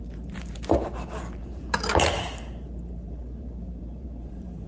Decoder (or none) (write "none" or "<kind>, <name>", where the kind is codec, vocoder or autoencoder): vocoder, BigVGAN v2